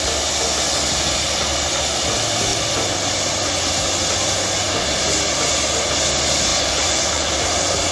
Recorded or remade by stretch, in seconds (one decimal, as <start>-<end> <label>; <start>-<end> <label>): 0.0-6.5 recorded; 6.5-7.3 remade; 7.3-7.9 recorded